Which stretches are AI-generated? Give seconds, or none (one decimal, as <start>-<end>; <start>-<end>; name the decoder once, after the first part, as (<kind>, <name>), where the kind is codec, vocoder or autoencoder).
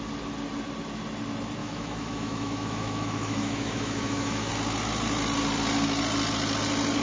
1.6-4.5 (autoencoder, DAC-VAE)